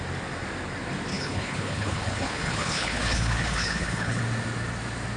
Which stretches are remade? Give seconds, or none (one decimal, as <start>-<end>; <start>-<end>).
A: 1.1-4.2